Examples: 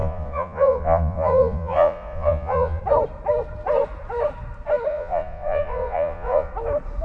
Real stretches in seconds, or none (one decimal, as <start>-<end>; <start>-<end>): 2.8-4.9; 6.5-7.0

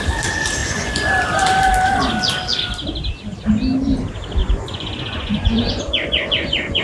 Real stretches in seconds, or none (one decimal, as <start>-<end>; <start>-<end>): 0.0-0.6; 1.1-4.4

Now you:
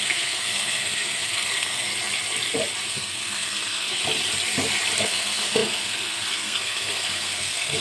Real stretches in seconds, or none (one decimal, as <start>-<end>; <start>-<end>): 1.9-2.9; 4.0-5.0

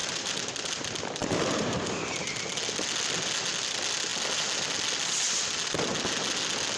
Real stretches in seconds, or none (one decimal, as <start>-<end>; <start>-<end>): 0.5-1.2; 2.4-6.8

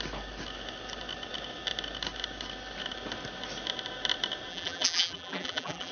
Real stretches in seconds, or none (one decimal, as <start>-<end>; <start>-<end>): 0.0-4.5